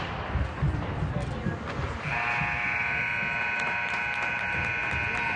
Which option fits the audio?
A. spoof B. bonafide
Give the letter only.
B